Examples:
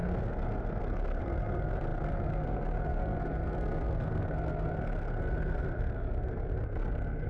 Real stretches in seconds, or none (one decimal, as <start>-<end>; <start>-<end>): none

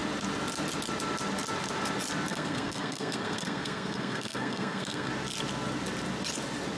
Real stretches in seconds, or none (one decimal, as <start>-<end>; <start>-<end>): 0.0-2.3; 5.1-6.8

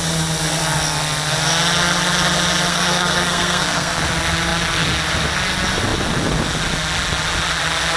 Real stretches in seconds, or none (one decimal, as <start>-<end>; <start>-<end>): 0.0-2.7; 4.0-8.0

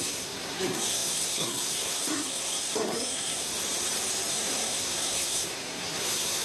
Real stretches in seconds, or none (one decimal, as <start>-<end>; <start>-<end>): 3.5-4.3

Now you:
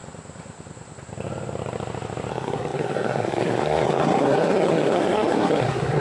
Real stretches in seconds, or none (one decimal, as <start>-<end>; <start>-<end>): 0.0-2.3

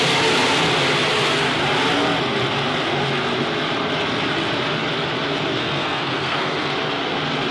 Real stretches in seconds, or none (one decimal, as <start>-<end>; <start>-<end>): 0.0-5.6; 6.7-7.5

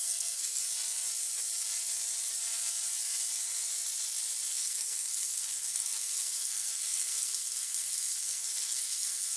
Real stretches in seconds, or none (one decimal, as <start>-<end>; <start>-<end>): 0.6-4.5

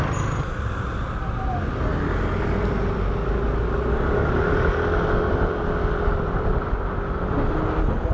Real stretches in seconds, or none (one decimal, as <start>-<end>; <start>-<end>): 0.0-8.1